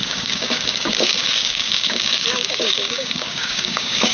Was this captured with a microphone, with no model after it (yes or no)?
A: no